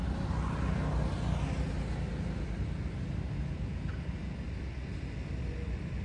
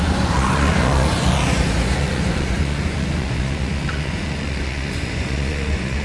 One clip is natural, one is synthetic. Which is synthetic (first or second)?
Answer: second